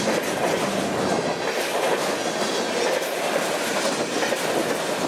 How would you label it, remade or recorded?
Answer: recorded